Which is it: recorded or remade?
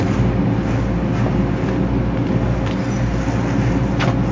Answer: recorded